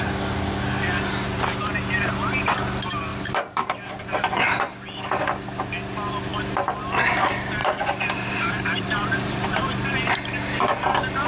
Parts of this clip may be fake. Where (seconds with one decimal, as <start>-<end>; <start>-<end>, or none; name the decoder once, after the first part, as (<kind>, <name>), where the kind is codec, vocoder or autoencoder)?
3.1-4.7 (vocoder, BigVGAN v2); 7.6-10.1